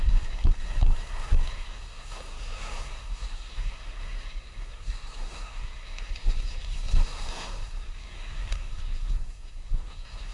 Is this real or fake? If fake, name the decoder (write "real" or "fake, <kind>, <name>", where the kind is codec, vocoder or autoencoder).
fake, codec, SNAC